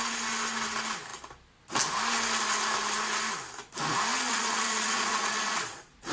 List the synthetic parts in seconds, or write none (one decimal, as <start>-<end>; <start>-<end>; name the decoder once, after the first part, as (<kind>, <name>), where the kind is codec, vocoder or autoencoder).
4.1-6.1 (vocoder, Vocos)